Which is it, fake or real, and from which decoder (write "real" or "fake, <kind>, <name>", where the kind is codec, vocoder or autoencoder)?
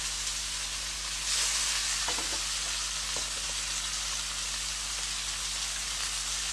real